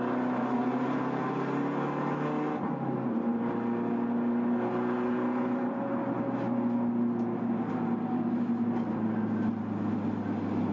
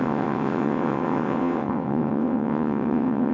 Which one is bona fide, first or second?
first